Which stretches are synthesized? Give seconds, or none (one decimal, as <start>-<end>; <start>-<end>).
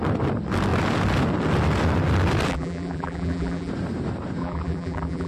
2.5-3.7; 4.4-5.3